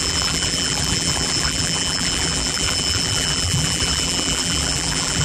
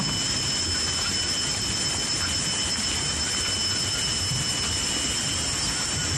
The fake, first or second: first